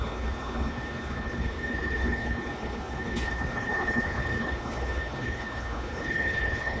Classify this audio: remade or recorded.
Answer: remade